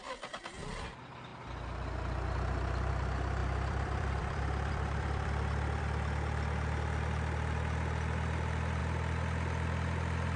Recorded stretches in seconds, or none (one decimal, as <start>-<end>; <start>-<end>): 0.0-3.4; 5.8-10.4